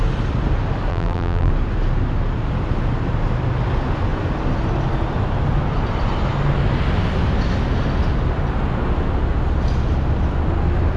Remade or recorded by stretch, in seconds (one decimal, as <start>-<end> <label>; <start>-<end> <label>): 0.0-0.9 recorded; 0.9-1.5 remade; 1.5-11.0 recorded